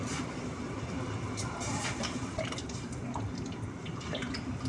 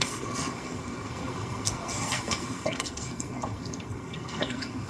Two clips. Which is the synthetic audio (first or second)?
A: second